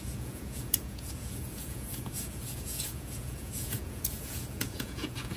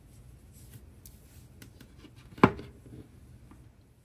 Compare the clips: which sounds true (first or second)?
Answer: second